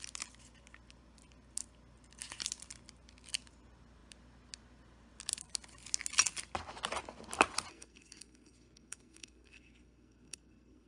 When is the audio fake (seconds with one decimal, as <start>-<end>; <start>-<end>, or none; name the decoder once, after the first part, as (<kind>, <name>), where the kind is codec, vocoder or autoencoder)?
7.7-10.9 (codec, SNAC)